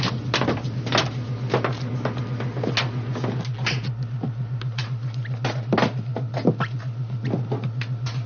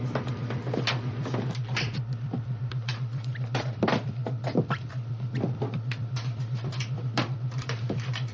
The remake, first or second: second